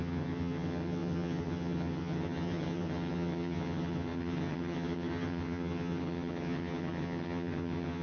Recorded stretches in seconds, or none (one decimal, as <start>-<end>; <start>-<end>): none